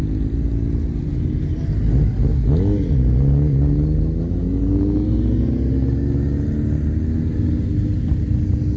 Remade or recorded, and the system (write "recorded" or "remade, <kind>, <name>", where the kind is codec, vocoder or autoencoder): recorded